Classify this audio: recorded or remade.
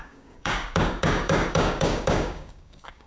remade